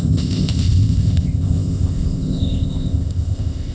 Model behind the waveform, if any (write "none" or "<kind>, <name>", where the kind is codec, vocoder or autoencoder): codec, ZipCodec